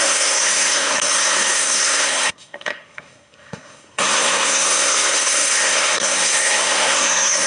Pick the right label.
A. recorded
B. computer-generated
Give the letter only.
B